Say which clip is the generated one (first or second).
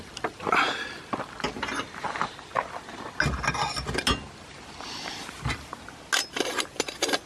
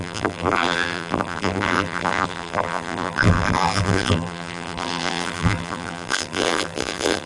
second